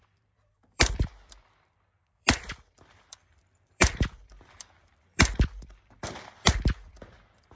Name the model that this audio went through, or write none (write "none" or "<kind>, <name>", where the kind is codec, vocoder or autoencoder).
vocoder, BigVGAN v2